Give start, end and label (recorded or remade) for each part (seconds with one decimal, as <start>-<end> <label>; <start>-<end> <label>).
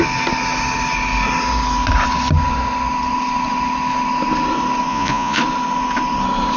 0.0-4.9 recorded; 4.9-5.4 remade; 5.4-6.6 recorded